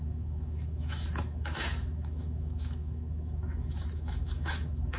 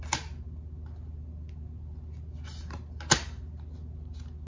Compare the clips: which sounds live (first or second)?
second